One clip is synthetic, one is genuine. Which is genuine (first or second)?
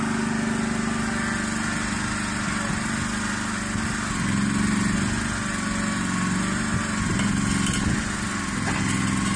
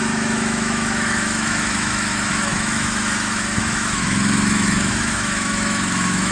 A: first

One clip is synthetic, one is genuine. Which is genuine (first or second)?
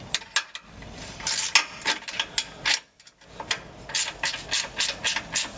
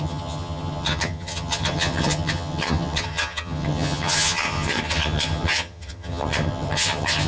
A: first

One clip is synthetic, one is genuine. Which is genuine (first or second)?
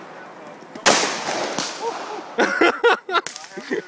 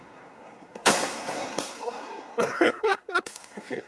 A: first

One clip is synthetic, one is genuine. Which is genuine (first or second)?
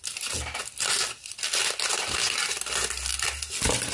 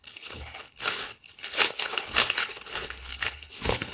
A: first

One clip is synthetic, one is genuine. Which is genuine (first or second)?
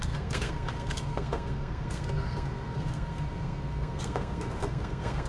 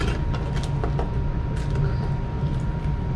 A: second